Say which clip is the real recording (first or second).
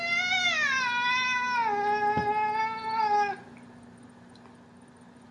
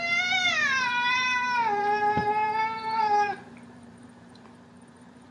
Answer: first